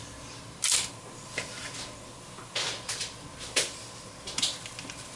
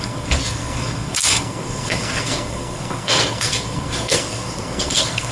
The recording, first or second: first